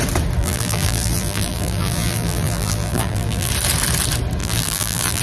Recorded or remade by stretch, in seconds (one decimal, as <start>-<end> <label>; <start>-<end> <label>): 0.0-0.4 recorded; 0.4-3.5 remade; 3.5-4.4 recorded; 4.4-5.2 remade